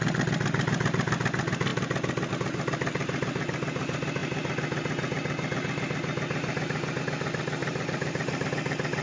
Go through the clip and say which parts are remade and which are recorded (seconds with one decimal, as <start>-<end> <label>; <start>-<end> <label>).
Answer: 0.0-7.6 recorded; 7.6-8.5 remade; 8.5-9.0 recorded